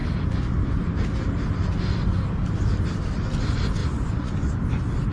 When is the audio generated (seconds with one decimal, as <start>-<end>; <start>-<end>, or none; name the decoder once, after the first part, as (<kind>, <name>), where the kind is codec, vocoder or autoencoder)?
3.8-4.5 (vocoder, Vocos)